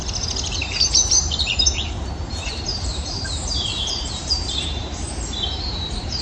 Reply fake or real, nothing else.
fake